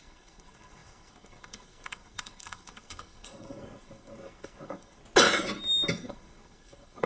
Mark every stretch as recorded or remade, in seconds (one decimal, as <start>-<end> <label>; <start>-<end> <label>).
0.0-5.0 remade; 5.0-5.9 recorded; 5.9-7.1 remade